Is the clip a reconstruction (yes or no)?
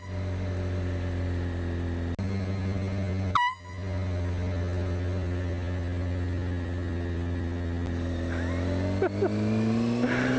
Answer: no